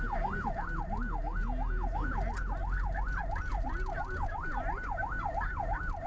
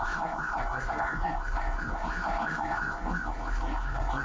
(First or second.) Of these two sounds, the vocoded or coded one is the second